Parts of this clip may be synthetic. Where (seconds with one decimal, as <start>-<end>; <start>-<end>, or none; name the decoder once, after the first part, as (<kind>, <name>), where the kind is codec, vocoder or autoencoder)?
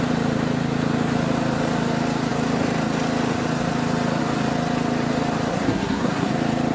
5.5-6.3 (codec, SNAC)